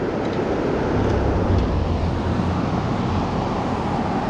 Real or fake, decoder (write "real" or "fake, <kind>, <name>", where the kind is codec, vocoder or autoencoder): real